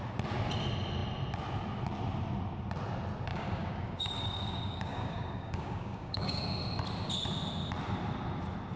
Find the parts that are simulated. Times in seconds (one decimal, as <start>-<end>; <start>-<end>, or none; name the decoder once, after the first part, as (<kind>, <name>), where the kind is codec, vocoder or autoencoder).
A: 3.3-6.4 (codec, DAC)